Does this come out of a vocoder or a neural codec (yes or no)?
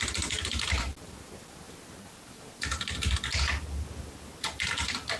no